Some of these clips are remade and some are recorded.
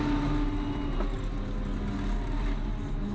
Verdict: recorded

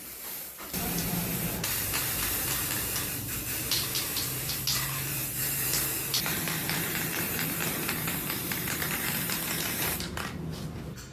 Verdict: remade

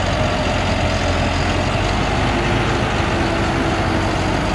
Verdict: recorded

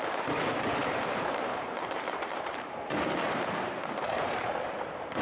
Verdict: remade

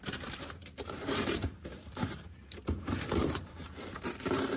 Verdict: remade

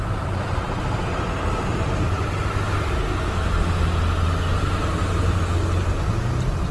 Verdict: recorded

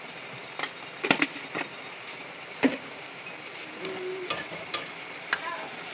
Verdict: recorded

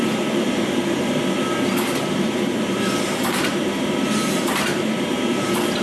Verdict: remade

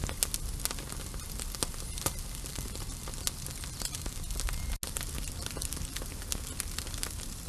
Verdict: recorded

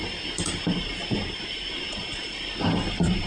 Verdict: recorded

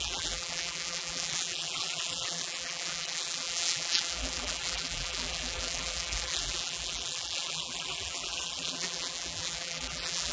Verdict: remade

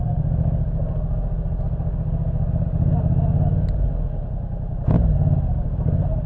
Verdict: recorded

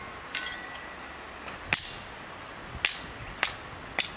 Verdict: recorded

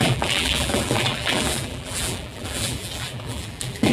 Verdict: remade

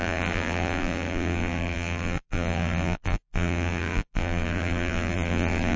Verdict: remade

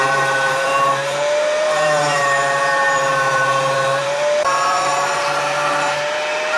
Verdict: remade